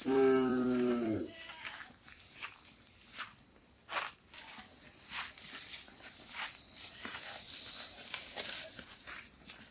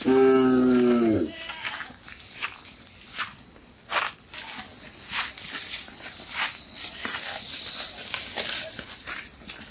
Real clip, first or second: second